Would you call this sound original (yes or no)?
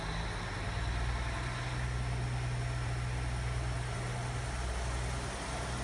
yes